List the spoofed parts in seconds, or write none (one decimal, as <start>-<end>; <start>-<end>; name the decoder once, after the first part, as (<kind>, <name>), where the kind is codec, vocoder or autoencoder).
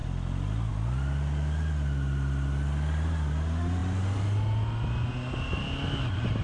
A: none